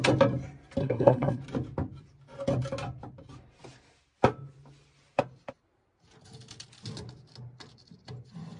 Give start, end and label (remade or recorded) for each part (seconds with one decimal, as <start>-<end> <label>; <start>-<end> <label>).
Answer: 0.0-0.8 recorded; 0.8-1.4 remade; 1.4-8.6 recorded